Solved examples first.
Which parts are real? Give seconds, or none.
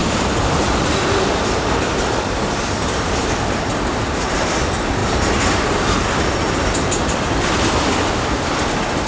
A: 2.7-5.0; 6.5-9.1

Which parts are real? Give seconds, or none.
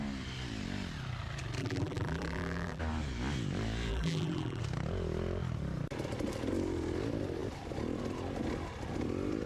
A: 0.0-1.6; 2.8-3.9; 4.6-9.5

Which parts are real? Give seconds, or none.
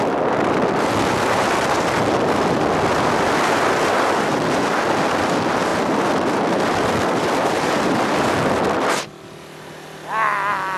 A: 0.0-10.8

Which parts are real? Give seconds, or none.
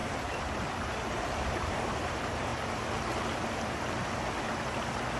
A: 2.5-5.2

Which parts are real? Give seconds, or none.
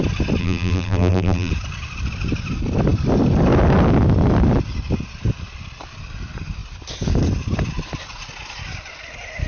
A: 0.0-0.4; 1.5-9.5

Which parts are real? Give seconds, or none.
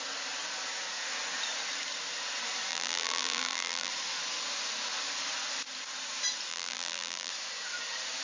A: 0.0-2.7; 3.9-6.5; 7.3-8.2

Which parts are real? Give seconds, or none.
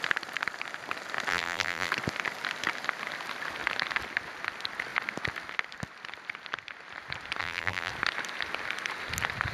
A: 0.0-1.3; 1.9-7.4; 7.9-9.5